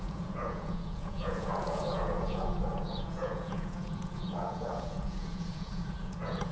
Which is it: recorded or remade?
remade